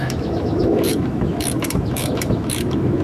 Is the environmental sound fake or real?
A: fake